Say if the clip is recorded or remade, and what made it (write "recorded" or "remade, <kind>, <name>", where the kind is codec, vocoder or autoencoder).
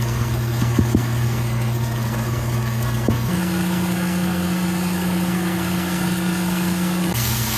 remade, codec, SNAC